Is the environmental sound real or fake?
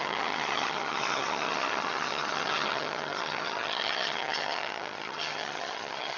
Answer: fake